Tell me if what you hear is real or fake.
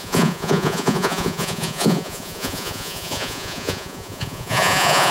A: fake